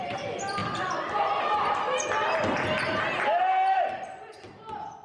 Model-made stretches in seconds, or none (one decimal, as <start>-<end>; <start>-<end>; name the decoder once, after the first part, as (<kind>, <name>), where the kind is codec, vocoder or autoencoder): none